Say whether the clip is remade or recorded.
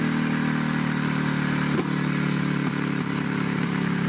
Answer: recorded